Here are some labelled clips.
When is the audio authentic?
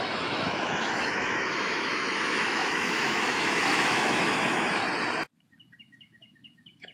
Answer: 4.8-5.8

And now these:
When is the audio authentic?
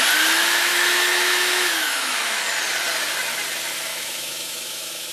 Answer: 0.0-0.7; 2.4-3.9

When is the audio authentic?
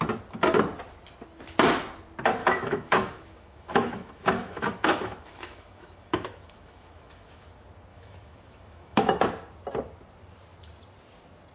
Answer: 0.0-2.4; 7.4-7.9; 9.2-11.5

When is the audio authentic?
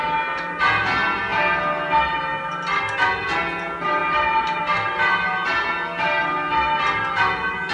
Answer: 0.0-7.7